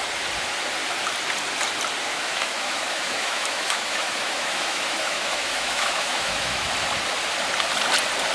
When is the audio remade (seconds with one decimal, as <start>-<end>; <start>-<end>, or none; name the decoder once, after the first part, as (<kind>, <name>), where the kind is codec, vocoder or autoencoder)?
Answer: 2.1-6.7 (autoencoder, DAC-VAE)